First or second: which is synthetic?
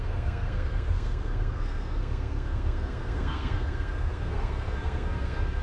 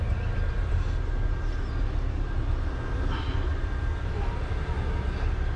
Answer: first